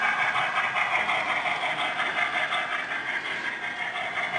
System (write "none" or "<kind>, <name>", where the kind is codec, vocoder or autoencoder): none